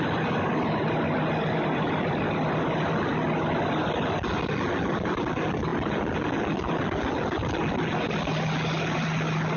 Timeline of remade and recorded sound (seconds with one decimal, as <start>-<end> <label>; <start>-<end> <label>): 0.0-9.6 recorded